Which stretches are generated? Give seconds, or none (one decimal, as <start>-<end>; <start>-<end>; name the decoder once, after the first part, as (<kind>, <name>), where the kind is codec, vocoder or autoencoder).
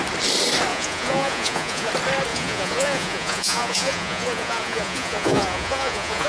0.7-1.9 (vocoder, Vocos); 2.3-6.3